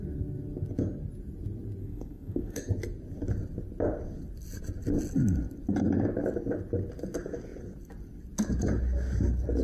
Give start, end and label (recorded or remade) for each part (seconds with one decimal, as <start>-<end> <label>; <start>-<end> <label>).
0.0-1.8 recorded; 1.8-2.7 remade; 2.7-9.6 recorded